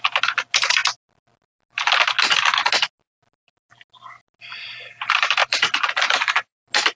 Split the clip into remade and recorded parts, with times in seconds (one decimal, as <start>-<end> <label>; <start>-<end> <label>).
0.0-5.4 recorded; 5.4-6.5 remade; 6.5-6.9 recorded